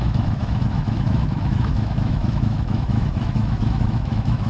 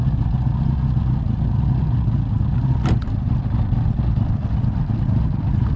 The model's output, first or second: first